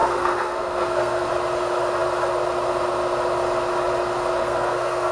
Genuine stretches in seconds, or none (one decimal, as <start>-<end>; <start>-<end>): 1.3-4.4